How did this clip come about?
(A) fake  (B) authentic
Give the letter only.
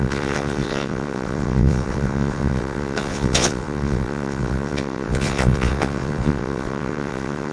A